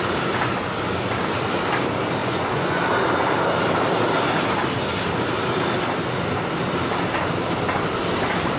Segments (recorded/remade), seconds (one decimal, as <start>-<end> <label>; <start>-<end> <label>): 0.0-2.2 recorded; 2.2-2.8 remade; 2.8-8.6 recorded